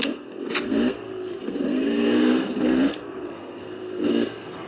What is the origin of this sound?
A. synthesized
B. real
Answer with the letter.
A